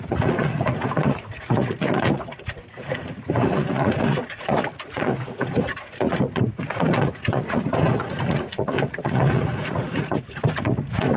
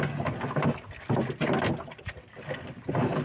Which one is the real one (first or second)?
second